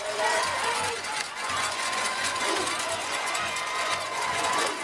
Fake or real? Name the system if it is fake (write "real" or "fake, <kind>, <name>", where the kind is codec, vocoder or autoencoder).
fake, vocoder, Vocos